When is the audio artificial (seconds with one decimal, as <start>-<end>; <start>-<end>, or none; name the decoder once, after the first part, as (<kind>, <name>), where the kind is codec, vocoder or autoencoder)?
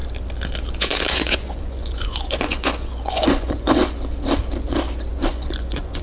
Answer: 0.8-3.8 (vocoder, Vocos); 5.1-6.0